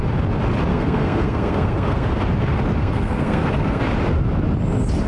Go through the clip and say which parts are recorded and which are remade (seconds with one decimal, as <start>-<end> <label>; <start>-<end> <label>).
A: 0.0-0.7 recorded; 0.7-2.2 remade; 2.2-2.8 recorded; 2.8-3.8 remade; 3.8-5.1 recorded

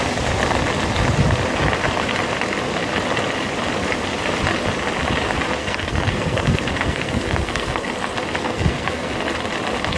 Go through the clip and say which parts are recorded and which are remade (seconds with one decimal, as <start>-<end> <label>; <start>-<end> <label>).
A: 0.0-5.6 recorded; 5.6-7.9 remade; 7.9-8.4 recorded; 8.4-9.1 remade; 9.1-10.0 recorded

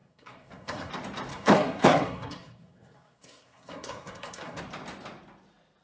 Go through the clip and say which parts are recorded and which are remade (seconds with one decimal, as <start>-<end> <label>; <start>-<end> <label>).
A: 0.0-0.9 remade; 0.9-1.3 recorded; 1.3-4.6 remade; 4.6-5.8 recorded

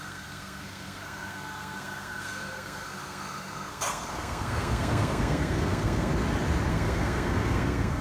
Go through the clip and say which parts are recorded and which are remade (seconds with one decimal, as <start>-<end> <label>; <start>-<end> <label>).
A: 0.0-6.1 remade; 6.1-6.7 recorded; 6.7-8.0 remade

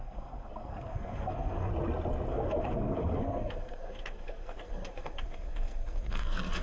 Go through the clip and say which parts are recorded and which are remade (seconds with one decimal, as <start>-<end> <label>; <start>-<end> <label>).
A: 0.0-1.7 remade; 1.7-2.3 recorded; 2.3-6.6 remade